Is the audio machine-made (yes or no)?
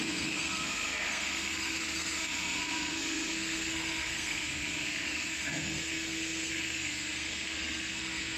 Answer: yes